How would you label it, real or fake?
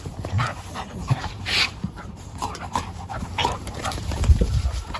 fake